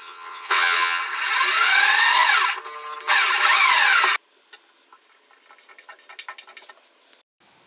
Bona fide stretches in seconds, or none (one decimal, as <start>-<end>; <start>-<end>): 1.0-7.7